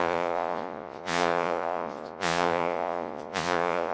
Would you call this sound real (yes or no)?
no